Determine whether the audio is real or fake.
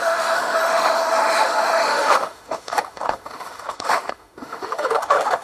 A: fake